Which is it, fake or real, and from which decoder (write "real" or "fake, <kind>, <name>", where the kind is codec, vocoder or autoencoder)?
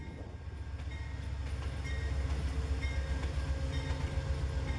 real